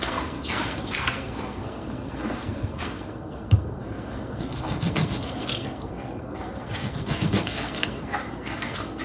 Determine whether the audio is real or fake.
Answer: fake